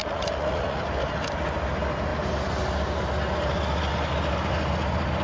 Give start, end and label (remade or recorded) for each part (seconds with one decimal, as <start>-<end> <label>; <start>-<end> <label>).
0.0-0.8 remade; 0.8-5.2 recorded